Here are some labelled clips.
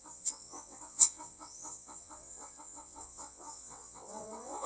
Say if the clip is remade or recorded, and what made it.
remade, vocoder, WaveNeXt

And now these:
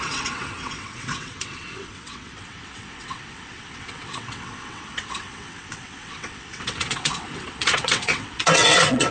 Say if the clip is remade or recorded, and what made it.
remade, vocoder, WaveNeXt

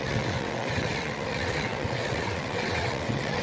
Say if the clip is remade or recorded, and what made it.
remade, vocoder, WaveNeXt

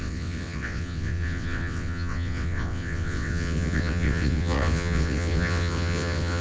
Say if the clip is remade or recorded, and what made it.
remade, vocoder, WaveNeXt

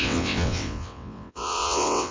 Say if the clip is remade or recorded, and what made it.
remade, vocoder, WaveNeXt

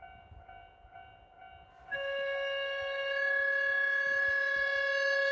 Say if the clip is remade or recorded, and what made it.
recorded